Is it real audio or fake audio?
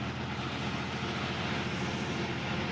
real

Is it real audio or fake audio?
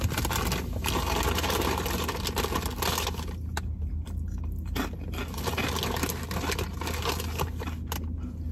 real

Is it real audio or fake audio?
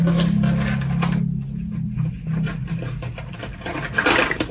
real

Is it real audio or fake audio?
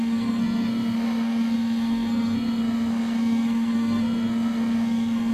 fake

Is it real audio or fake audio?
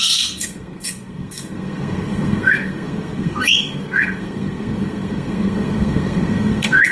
fake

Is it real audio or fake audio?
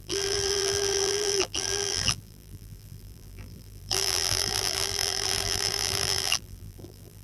fake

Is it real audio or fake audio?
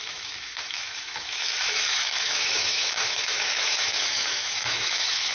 fake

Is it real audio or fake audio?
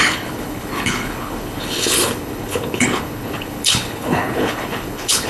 fake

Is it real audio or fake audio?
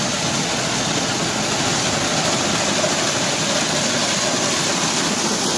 real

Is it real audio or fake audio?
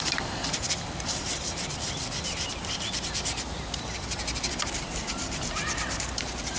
fake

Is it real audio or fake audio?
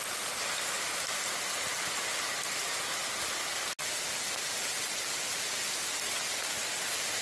real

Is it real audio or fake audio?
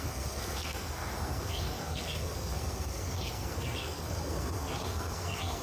fake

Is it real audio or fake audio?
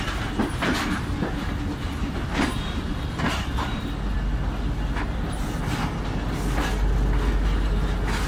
real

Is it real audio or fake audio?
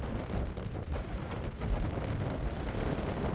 real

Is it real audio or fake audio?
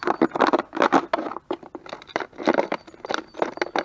real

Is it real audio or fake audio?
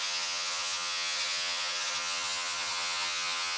fake